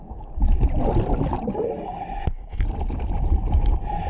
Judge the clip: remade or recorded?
remade